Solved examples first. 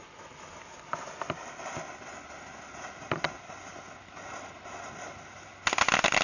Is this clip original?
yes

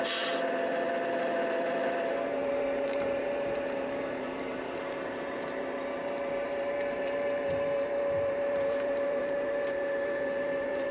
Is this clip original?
no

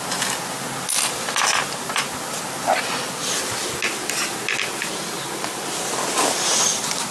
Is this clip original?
yes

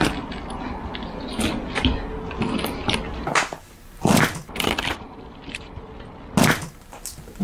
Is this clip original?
yes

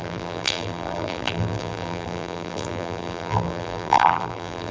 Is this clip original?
no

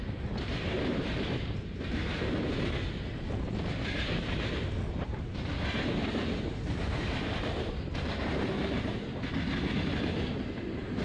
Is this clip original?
no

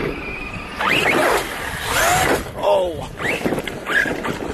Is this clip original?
yes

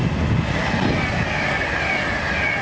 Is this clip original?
yes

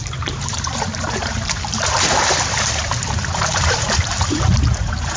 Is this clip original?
no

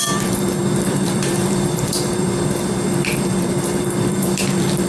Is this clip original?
no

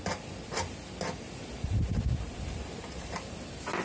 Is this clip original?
no